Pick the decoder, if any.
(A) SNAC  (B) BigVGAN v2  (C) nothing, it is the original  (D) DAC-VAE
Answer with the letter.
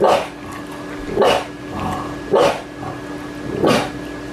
C